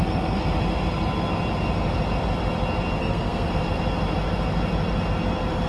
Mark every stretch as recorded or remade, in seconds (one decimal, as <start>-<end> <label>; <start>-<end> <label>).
0.0-3.0 recorded; 3.0-3.5 remade; 3.5-5.7 recorded